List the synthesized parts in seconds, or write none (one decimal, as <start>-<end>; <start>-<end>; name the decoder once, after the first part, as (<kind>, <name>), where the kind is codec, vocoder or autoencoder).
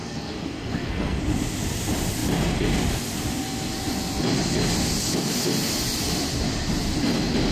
0.0-1.2 (codec, SNAC)